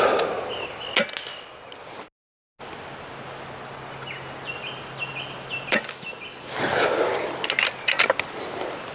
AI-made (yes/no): no